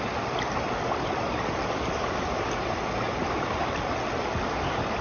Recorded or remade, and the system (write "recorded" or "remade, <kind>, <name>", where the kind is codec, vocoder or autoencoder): recorded